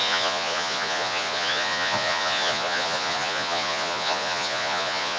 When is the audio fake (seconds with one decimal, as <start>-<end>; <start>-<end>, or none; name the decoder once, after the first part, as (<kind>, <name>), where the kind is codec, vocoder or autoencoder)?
0.0-5.2 (vocoder, Vocos)